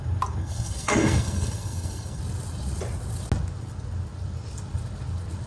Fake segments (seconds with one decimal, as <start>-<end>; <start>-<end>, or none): 0.4-2.2